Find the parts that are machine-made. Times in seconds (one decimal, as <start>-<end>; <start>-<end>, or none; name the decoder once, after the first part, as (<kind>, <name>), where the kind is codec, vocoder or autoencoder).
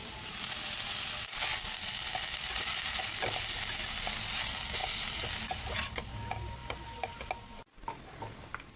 0.0-0.5 (vocoder, BigVGAN v2)